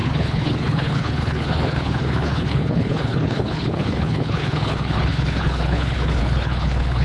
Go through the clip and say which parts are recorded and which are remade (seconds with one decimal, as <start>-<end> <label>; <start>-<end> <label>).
0.0-7.0 remade